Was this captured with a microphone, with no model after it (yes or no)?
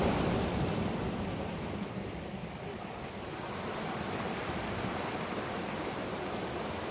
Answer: yes